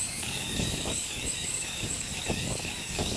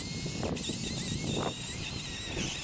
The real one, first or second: second